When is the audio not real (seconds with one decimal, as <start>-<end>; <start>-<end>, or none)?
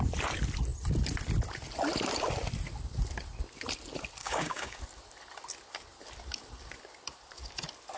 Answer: 4.2-4.8